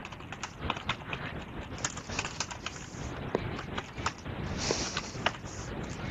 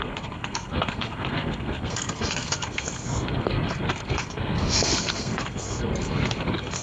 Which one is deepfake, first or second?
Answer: second